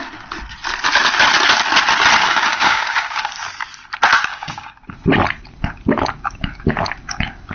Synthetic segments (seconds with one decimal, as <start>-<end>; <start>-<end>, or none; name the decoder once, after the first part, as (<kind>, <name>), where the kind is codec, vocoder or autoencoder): 2.2-3.3 (codec, DAC); 4.3-5.0